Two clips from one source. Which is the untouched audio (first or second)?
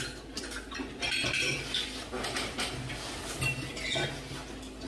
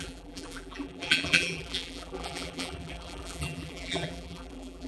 first